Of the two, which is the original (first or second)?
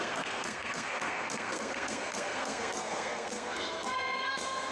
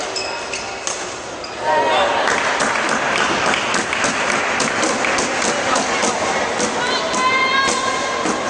second